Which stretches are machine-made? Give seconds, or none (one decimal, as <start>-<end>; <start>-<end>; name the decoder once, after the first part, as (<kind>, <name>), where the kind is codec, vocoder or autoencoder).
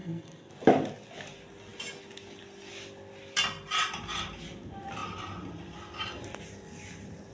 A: 0.0-0.5 (codec, SNAC)